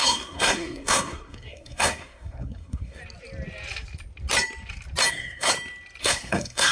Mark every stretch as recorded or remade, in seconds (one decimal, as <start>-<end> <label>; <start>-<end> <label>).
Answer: 0.0-3.0 remade; 3.0-5.1 recorded; 5.1-5.5 remade; 5.5-6.0 recorded; 6.0-6.7 remade